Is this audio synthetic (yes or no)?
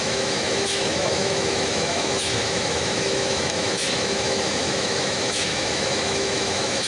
yes